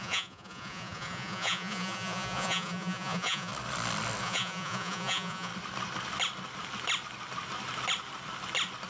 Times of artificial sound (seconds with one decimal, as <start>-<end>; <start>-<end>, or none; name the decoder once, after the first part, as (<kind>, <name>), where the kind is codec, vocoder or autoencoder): 0.0-3.5 (vocoder, Vocos); 4.2-5.5